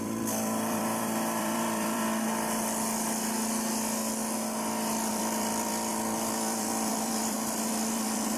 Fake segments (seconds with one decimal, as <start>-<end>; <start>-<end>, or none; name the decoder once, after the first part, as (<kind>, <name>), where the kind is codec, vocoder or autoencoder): 0.0-2.0 (vocoder, BigVGAN v2); 5.1-8.4